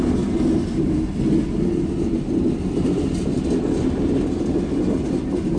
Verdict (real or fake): real